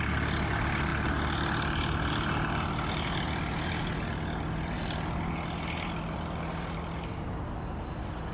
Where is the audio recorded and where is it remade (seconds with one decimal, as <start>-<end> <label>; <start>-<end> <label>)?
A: 0.0-8.3 recorded